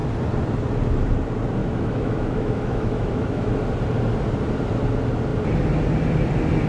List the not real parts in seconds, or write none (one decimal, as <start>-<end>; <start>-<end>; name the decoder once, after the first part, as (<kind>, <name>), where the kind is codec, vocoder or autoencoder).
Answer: 1.6-3.5 (autoencoder, DAC-VAE)